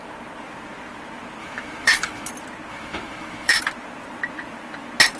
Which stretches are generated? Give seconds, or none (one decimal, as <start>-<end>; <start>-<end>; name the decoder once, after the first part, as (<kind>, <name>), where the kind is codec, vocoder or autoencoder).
1.4-2.3 (autoencoder, DAC-VAE); 2.7-3.6